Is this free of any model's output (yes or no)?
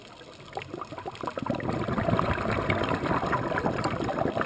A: yes